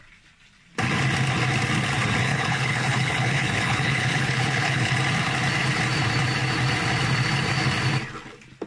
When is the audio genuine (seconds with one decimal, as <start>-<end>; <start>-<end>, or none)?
0.0-2.2; 4.9-8.7

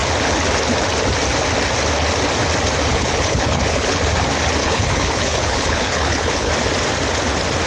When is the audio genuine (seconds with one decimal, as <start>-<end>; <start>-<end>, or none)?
0.0-2.9; 4.0-4.6; 6.5-7.7